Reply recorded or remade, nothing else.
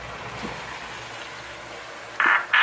recorded